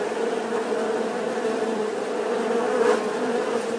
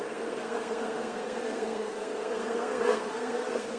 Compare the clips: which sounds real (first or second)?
first